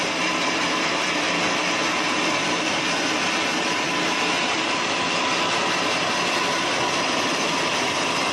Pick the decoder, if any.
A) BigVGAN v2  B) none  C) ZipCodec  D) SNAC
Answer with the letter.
B